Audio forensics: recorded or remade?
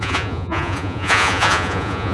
remade